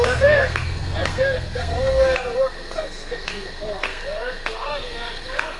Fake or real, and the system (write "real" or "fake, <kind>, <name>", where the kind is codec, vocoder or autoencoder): fake, codec, SNAC